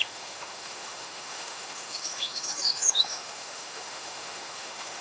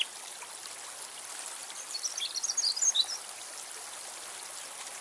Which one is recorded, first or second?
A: second